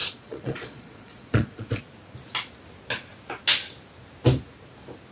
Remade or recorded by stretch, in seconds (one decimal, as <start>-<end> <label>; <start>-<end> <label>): 0.0-1.8 remade; 1.8-5.1 recorded